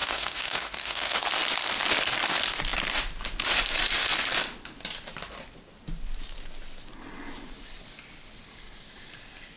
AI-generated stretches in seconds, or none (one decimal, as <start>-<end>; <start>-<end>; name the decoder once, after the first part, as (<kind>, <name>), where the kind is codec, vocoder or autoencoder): 0.0-1.2 (autoencoder, DAC-VAE)